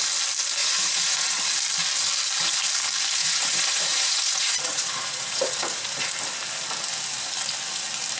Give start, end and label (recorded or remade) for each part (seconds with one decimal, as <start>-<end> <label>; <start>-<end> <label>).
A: 0.0-0.6 recorded; 0.6-1.4 remade; 1.4-3.2 recorded; 3.2-6.1 remade; 6.1-8.2 recorded